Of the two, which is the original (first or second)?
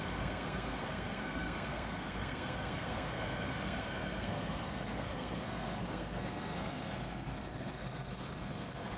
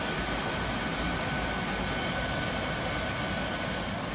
second